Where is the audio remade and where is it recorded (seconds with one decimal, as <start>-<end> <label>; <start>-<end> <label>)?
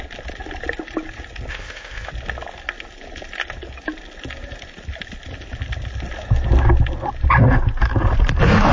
0.0-1.5 recorded; 1.5-2.1 remade; 2.1-8.7 recorded